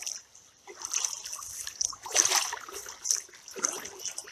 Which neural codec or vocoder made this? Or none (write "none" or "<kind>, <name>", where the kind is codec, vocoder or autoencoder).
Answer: none